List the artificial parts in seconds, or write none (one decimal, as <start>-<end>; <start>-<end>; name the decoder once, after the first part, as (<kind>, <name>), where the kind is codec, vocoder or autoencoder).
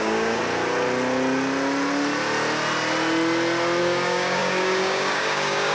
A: 0.0-0.4 (codec, DAC); 3.8-5.7